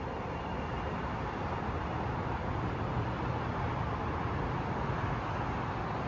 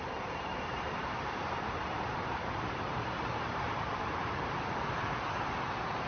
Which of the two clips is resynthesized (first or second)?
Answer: second